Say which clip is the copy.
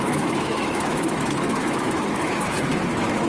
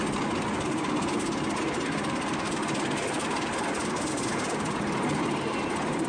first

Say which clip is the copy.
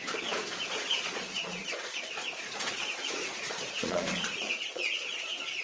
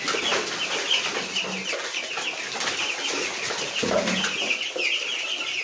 first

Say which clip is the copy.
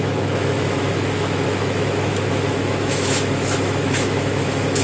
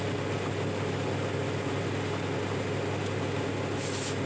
first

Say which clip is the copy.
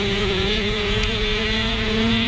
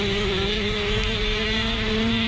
first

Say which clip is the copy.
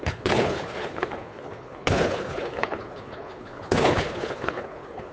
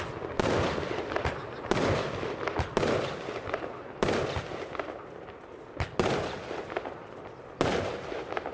first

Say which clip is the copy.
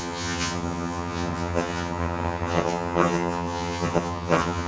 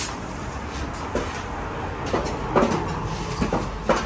first